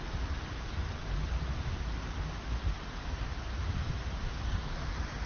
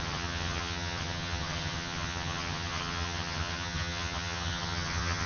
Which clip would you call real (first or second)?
first